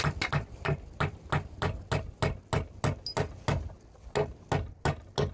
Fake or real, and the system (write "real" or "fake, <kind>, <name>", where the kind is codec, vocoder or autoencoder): real